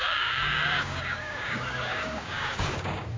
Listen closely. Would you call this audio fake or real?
fake